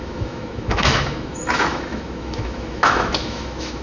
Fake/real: fake